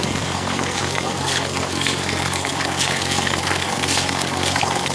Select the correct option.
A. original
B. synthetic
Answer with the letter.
B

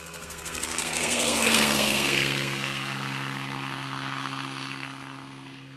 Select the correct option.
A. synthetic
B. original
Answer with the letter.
A